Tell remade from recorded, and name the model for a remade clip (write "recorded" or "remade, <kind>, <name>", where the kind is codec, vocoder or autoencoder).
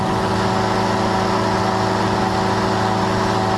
recorded